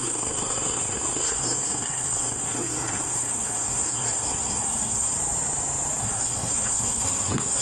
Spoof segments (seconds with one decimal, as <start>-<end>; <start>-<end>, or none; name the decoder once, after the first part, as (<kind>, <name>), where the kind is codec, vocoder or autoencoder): 0.0-5.1 (codec, SNAC); 6.0-7.6